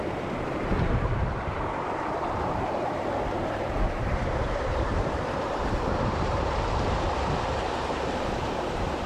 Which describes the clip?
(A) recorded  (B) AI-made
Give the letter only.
B